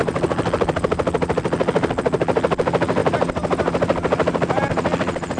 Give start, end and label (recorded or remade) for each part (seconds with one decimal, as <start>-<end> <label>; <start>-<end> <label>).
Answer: 0.0-5.4 recorded